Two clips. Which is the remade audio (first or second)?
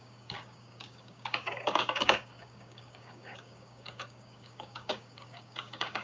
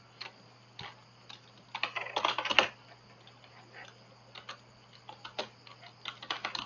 first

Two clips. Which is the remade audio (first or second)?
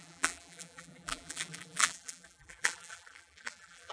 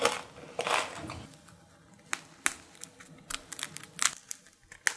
first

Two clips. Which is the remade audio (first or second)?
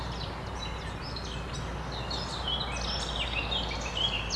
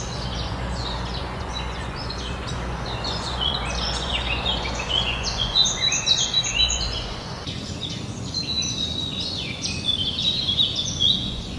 second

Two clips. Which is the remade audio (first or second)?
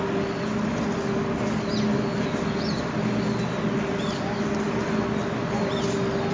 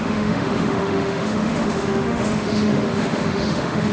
second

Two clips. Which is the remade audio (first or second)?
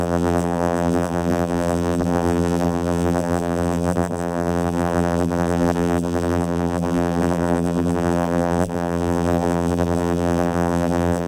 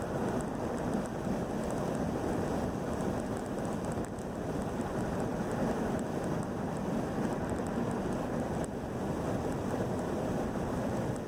first